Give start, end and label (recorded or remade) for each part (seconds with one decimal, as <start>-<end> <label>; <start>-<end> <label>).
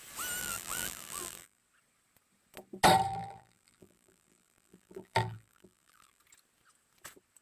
0.0-0.4 recorded; 0.4-1.6 remade; 1.6-3.1 recorded; 3.1-6.2 remade; 6.2-7.4 recorded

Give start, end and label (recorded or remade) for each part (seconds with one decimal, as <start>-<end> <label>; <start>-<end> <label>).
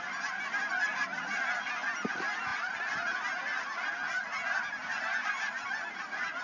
0.0-6.4 recorded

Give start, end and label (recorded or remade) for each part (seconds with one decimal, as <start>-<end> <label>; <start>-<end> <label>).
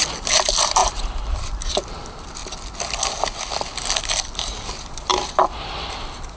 0.0-0.8 remade; 0.8-1.4 recorded; 1.4-2.4 remade; 2.4-4.0 recorded; 4.0-5.1 remade; 5.1-6.0 recorded; 6.0-6.4 remade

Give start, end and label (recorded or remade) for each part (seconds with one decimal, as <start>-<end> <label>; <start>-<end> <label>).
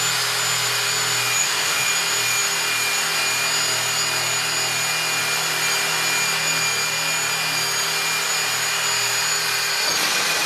0.0-1.4 recorded; 1.4-1.9 remade; 1.9-10.5 recorded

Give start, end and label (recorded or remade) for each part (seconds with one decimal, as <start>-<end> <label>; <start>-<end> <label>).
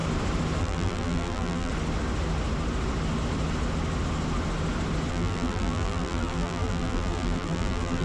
0.0-0.6 recorded; 0.6-1.7 remade; 1.7-5.1 recorded; 5.1-8.0 remade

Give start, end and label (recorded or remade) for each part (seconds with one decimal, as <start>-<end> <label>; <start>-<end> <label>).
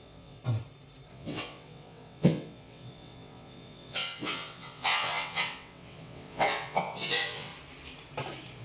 0.0-0.4 remade; 0.4-1.1 recorded; 1.1-7.5 remade; 7.5-8.6 recorded